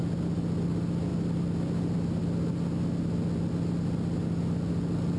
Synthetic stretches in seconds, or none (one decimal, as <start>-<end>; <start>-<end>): none